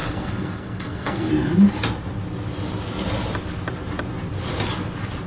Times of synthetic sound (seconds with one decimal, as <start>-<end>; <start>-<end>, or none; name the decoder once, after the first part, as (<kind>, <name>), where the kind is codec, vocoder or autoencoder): 0.0-1.3 (codec, SNAC)